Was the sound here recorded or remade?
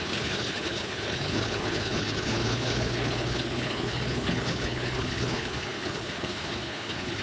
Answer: remade